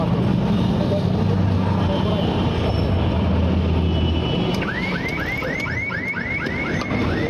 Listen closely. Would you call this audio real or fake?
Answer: real